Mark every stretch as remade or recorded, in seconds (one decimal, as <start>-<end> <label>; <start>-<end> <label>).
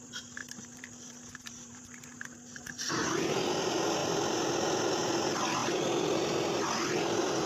0.0-0.4 recorded; 0.4-2.9 remade; 2.9-5.6 recorded; 5.6-6.2 remade; 6.2-7.5 recorded